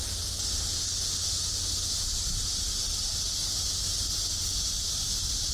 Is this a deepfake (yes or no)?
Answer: no